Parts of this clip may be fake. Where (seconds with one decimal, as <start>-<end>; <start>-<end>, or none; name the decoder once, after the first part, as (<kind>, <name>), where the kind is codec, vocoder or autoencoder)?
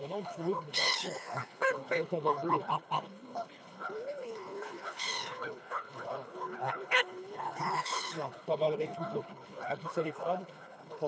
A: 0.0-11.1 (codec, HILCodec)